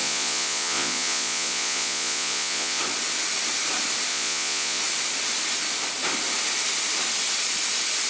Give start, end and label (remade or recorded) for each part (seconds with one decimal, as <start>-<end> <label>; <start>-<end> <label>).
0.0-2.8 remade; 2.8-4.1 recorded; 4.1-4.8 remade; 4.8-8.1 recorded